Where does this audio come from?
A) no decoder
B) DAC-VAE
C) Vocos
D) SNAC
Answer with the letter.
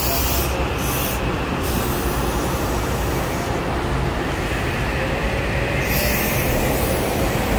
A